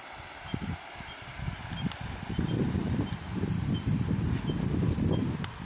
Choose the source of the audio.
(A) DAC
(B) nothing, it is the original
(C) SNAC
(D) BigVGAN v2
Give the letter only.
B